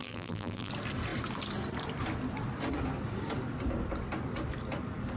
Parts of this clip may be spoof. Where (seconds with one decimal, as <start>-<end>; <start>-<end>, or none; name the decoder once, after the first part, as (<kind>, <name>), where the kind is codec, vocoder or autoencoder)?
0.0-0.7 (vocoder, BigVGAN v2)